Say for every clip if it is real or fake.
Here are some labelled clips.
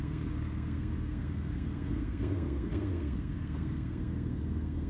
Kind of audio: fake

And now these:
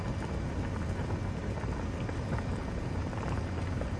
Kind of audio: real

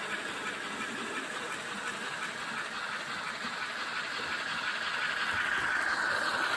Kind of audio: real